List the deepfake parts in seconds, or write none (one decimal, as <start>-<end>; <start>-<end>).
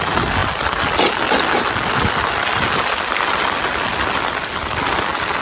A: none